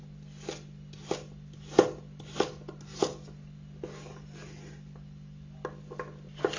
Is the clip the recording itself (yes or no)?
yes